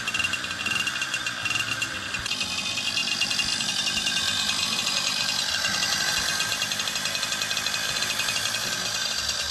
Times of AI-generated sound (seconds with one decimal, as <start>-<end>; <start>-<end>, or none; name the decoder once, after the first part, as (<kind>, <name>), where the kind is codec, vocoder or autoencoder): 6.5-7.3 (vocoder, BigVGAN v2)